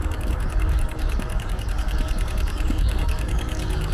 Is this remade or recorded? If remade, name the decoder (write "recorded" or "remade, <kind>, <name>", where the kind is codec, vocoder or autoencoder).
remade, codec, DAC